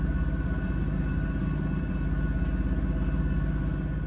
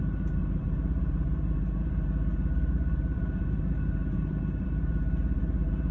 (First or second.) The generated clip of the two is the second